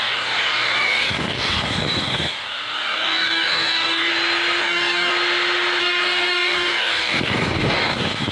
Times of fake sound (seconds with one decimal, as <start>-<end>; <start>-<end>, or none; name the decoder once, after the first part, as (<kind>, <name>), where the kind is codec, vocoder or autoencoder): 0.0-4.1 (codec, DAC); 4.6-5.1; 5.8-8.3